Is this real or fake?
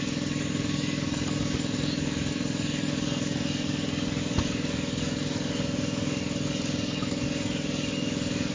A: fake